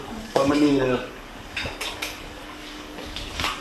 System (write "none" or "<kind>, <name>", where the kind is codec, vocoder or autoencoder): codec, DAC